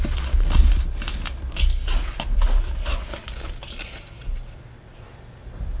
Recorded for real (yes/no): yes